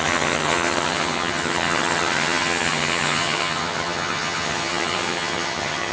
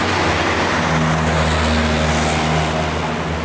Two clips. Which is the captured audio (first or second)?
second